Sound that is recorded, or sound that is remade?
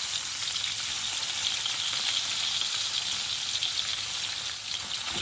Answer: recorded